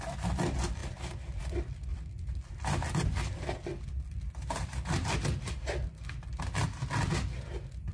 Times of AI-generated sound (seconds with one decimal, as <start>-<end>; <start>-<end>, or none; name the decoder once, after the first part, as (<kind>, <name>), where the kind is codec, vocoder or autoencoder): 1.9-2.9 (vocoder, BigVGAN v2); 3.7-6.4